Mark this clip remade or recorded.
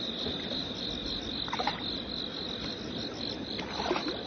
recorded